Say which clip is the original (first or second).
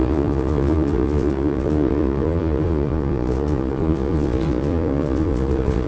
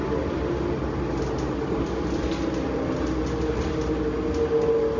second